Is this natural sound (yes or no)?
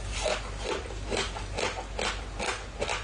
yes